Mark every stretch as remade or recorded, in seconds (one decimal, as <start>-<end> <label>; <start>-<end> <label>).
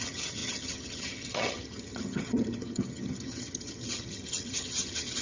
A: 0.0-5.2 remade